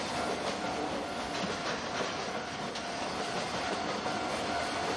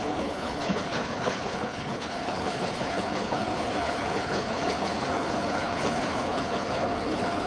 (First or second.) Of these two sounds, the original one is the first